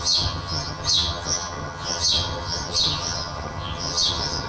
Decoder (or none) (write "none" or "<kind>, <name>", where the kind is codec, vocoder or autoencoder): vocoder, HiFi-GAN